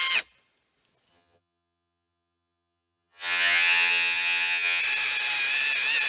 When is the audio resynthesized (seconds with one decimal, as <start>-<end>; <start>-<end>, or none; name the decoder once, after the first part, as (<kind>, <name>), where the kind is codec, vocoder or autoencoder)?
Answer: 1.1-4.8 (vocoder, HiFi-GAN)